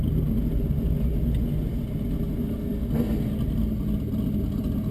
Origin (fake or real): real